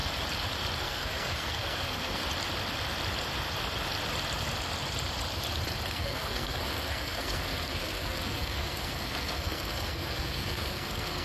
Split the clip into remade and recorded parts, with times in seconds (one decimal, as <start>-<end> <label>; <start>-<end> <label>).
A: 0.0-0.8 recorded; 0.8-2.2 remade; 2.2-5.9 recorded; 5.9-11.2 remade